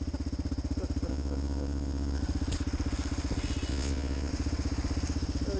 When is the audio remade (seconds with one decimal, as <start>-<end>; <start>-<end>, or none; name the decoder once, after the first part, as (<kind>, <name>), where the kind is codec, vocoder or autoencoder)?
1.1-2.2 (vocoder, Vocos); 3.7-4.3